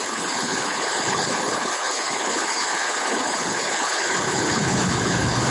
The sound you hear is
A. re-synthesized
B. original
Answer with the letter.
A